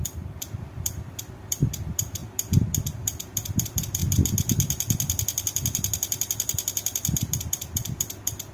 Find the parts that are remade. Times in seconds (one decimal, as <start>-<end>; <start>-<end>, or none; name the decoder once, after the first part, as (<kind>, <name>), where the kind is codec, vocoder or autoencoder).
0.0-2.2 (vocoder, BigVGAN v2); 2.8-4.0; 7.5-8.5